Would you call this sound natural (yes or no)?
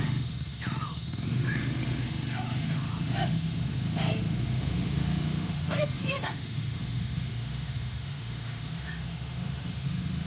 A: no